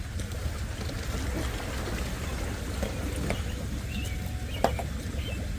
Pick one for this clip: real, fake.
real